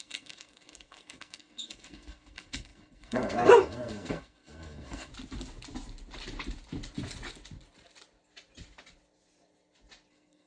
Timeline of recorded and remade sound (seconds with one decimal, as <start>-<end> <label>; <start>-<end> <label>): 0.0-5.1 remade; 5.1-10.1 recorded; 10.1-10.5 remade